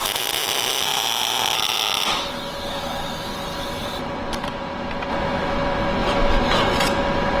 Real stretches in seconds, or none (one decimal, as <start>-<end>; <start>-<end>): 0.0-3.8; 4.9-6.0; 6.6-7.4